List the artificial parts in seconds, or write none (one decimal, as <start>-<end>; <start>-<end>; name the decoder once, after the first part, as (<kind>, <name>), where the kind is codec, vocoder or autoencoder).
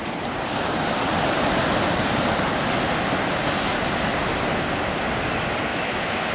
5.7-6.3 (autoencoder, DAC-VAE)